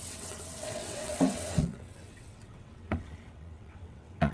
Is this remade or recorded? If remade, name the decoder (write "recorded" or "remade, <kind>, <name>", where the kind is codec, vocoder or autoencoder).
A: remade, vocoder, WaveNeXt